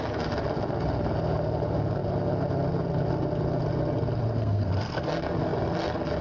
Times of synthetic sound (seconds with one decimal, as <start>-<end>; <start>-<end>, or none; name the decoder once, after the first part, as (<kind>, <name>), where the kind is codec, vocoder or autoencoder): 4.4-5.1 (codec, SNAC)

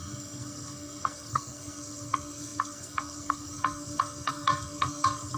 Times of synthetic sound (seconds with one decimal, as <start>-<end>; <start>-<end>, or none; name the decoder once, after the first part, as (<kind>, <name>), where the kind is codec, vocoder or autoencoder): 0.0-5.4 (codec, SNAC)

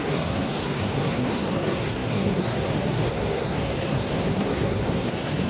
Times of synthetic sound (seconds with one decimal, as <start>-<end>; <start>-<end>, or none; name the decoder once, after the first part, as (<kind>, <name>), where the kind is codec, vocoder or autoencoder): 0.0-5.5 (codec, SNAC)

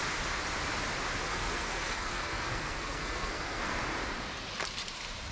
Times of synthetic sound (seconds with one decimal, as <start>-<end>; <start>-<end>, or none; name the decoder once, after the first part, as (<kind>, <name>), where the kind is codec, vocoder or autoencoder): 1.3-3.8 (codec, SNAC)

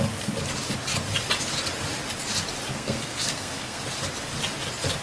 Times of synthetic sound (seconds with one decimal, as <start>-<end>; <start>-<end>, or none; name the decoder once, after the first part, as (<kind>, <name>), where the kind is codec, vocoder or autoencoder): 2.7-3.8 (codec, SNAC)